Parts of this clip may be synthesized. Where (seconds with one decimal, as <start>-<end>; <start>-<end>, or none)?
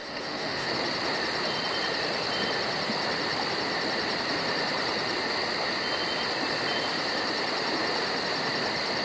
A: 0.0-0.7